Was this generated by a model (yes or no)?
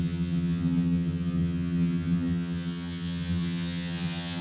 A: yes